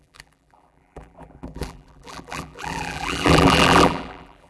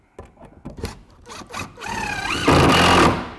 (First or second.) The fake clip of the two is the first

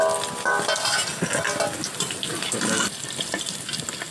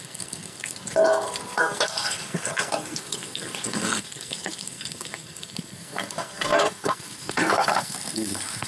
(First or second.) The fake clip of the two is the second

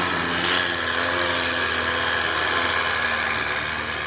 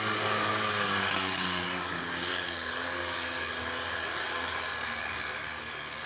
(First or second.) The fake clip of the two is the second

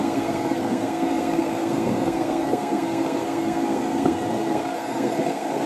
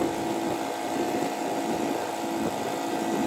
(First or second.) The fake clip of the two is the first